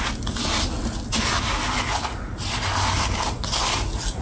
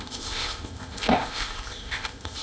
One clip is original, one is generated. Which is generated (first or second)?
second